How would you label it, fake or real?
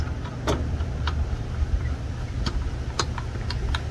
real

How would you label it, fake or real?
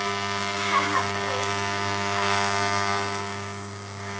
fake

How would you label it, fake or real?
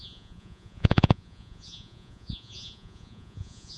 fake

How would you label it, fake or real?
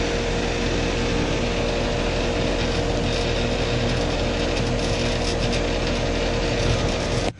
real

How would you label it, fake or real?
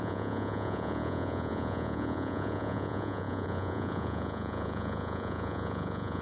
fake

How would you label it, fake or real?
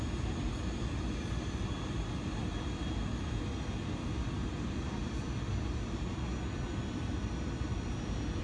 real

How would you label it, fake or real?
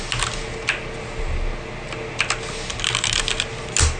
real